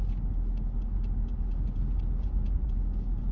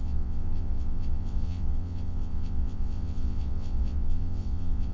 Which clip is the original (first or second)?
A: first